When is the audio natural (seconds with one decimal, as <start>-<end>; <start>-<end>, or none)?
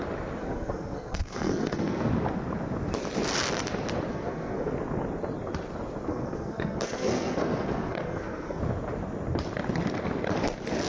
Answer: 0.0-0.4; 2.1-4.1; 4.7-6.1; 8.6-10.9